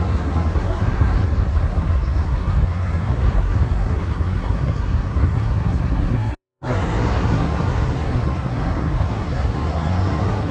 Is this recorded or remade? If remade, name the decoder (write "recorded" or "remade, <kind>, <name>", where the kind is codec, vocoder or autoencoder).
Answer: remade, codec, SNAC